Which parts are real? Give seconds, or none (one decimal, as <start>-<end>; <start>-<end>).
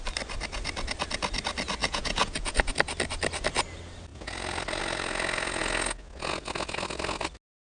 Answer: 0.0-1.8; 2.7-7.7